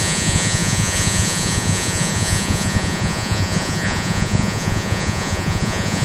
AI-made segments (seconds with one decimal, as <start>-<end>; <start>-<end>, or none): 0.0-6.0